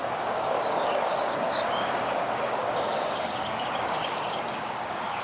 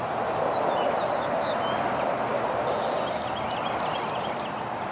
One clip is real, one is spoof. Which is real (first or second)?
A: second